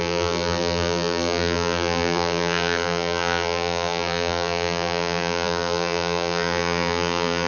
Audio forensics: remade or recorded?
remade